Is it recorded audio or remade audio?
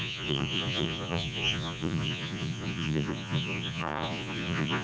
remade